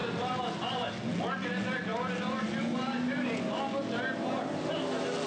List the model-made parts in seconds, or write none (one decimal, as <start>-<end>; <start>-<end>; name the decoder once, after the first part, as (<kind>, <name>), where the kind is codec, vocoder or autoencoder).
none

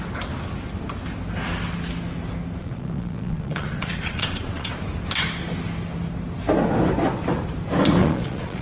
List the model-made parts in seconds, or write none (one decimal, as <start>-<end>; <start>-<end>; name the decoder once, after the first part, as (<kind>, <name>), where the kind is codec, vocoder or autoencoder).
2.6-4.7 (vocoder, Vocos); 8.0-8.6

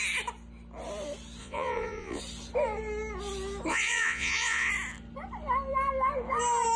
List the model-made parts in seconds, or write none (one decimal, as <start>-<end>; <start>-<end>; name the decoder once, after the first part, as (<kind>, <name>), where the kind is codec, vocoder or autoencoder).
1.4-2.2 (vocoder, Vocos); 3.7-4.7

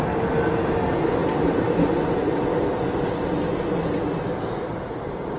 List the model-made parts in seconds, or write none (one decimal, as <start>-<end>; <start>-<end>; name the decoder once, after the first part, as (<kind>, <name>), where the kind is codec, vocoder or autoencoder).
none

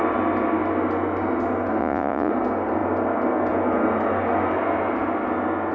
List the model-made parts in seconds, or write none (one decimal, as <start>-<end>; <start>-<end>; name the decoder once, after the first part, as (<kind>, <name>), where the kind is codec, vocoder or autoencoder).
1.8-2.3 (vocoder, Vocos)

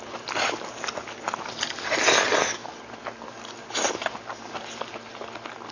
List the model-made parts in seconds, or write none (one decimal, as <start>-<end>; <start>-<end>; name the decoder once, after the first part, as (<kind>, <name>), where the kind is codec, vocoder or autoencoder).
none

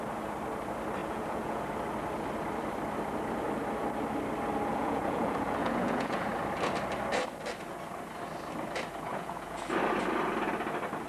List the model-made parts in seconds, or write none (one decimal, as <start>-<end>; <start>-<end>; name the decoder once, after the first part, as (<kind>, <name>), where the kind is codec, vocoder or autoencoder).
1.0-1.6 (vocoder, Vocos); 4.8-6.3; 9.1-9.6

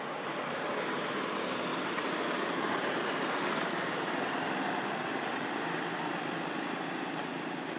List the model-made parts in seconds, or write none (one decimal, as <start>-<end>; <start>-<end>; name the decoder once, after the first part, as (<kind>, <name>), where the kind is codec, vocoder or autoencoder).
none